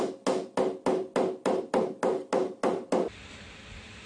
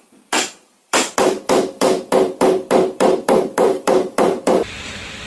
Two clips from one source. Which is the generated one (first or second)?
second